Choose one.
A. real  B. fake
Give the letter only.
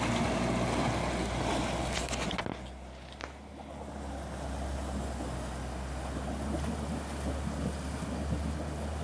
A